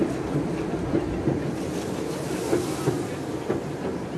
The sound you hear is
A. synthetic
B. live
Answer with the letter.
B